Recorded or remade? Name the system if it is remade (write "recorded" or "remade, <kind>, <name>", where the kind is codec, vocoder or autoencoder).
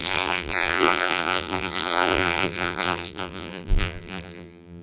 remade, vocoder, BigVGAN v2